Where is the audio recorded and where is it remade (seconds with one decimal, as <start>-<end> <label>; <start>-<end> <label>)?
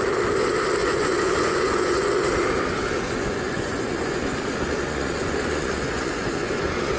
0.0-0.8 recorded; 0.8-2.2 remade; 2.2-2.8 recorded; 2.8-7.0 remade